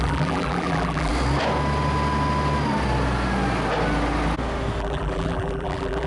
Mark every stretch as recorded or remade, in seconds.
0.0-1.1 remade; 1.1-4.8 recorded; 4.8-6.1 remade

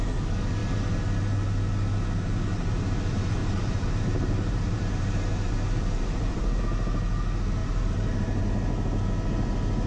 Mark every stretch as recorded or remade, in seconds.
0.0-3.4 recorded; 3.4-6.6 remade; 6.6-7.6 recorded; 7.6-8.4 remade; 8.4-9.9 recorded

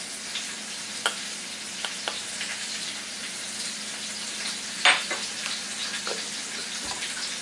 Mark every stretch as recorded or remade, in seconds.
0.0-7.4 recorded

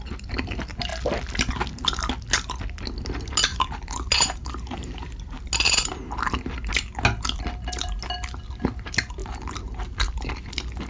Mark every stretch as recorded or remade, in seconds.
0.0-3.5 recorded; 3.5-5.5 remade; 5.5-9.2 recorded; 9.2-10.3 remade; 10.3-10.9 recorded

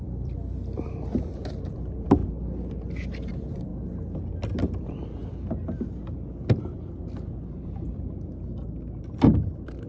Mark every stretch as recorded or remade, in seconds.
0.0-2.2 remade; 2.2-3.3 recorded; 3.3-3.7 remade; 3.7-4.3 recorded; 4.3-5.2 remade; 5.2-9.4 recorded; 9.4-9.9 remade

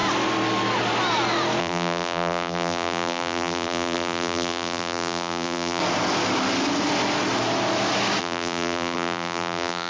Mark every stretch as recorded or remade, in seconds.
0.0-1.6 recorded; 1.6-5.8 remade; 5.8-8.2 recorded; 8.2-9.9 remade

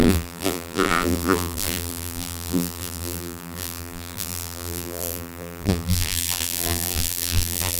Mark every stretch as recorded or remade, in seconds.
0.0-7.8 remade